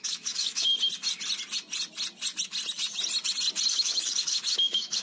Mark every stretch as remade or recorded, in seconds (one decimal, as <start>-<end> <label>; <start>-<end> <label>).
0.0-0.7 remade; 0.7-3.7 recorded; 3.7-5.0 remade

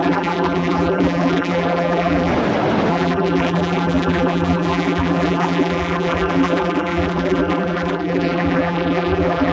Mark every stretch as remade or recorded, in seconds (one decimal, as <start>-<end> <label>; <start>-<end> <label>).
0.0-2.3 remade; 2.3-2.9 recorded; 2.9-9.5 remade

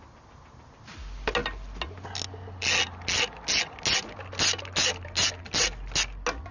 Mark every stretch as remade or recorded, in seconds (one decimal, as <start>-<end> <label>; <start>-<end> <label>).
0.0-6.5 recorded

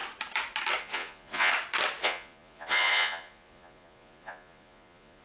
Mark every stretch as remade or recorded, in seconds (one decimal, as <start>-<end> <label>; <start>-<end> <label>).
0.0-0.8 recorded; 0.8-1.5 remade; 1.5-2.0 recorded; 2.0-5.2 remade

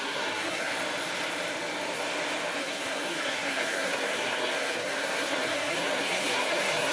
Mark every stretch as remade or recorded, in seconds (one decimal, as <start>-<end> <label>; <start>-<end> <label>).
0.0-0.7 remade; 0.7-2.6 recorded; 2.6-6.9 remade